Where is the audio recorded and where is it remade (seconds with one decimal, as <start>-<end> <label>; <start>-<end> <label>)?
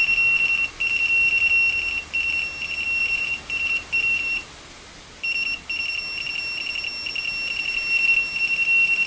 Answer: 0.0-3.0 recorded; 3.0-5.2 remade; 5.2-9.1 recorded